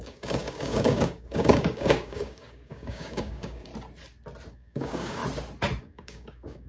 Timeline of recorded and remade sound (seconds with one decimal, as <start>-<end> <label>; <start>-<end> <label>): 0.0-3.7 remade; 3.7-4.5 recorded; 4.5-5.2 remade; 5.2-5.8 recorded; 5.8-6.7 remade